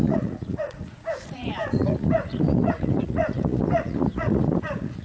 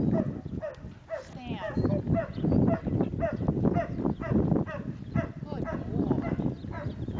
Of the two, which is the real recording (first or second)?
second